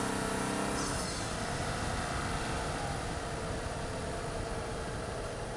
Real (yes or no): yes